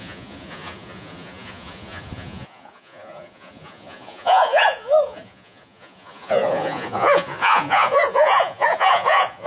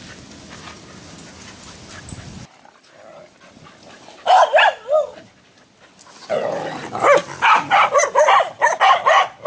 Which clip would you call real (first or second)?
second